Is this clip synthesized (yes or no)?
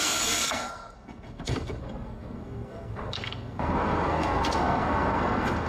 yes